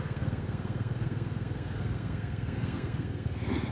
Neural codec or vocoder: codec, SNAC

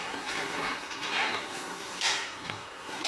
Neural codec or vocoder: codec, SNAC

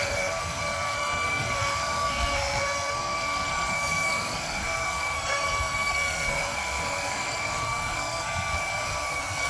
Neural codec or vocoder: codec, SNAC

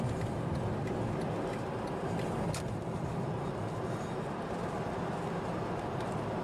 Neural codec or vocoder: none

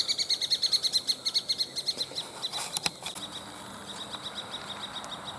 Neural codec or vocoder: none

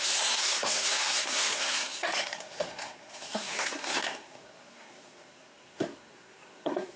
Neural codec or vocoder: codec, SNAC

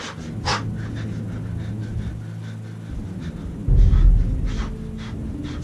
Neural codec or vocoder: none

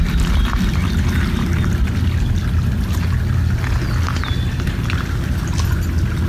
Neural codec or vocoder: none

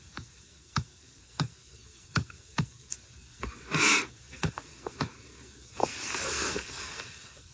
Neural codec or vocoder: codec, SNAC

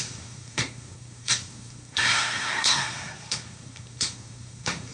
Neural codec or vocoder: codec, SNAC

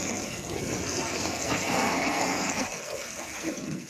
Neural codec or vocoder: codec, SNAC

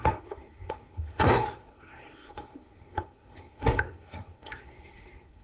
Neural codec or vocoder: codec, SNAC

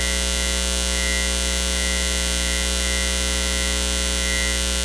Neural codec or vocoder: none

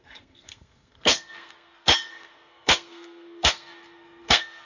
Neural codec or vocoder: codec, SNAC